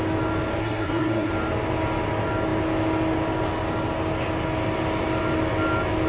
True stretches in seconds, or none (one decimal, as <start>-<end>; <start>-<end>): 0.0-0.6; 1.3-6.1